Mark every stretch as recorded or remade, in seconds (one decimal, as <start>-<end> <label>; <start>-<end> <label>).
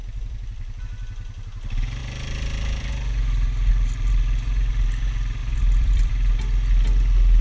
0.0-0.8 remade; 0.8-2.0 recorded; 2.0-2.9 remade; 2.9-5.4 recorded; 5.4-6.1 remade; 6.1-7.4 recorded